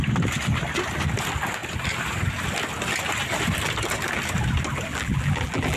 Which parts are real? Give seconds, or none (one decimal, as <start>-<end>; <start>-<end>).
0.0-4.9